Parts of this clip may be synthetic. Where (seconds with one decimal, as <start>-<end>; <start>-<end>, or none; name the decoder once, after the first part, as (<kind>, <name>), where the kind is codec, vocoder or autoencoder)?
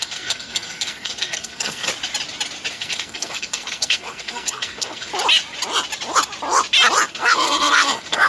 0.0-1.9 (codec, SNAC); 2.7-5.1; 7.1-8.3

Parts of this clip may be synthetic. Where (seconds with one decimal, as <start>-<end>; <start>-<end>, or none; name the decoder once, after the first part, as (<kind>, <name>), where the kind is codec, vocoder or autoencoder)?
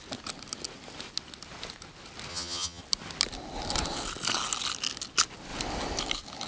2.3-2.8 (vocoder, HiFi-GAN)